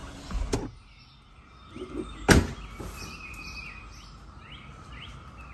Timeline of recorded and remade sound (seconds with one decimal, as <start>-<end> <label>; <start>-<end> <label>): 0.0-5.5 recorded